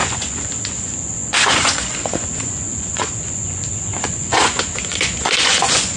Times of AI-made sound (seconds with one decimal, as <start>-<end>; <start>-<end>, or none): 0.0-6.0